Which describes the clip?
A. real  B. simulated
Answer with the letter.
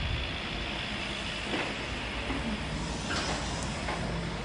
A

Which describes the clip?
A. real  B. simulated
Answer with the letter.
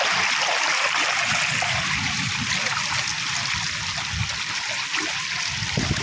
A